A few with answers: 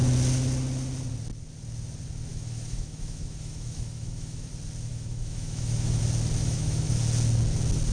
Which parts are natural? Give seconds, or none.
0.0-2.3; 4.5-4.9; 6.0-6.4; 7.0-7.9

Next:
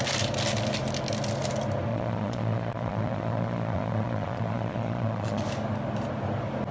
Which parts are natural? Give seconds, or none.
0.0-1.9; 5.4-6.7

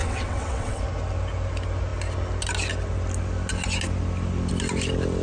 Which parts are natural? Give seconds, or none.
0.8-5.2

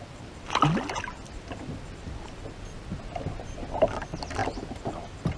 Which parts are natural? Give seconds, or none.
0.0-5.4

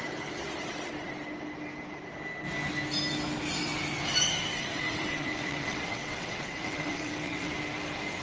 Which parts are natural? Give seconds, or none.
0.0-4.5; 7.5-8.2

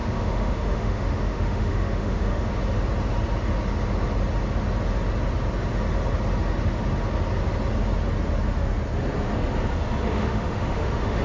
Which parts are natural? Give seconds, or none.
2.5-10.1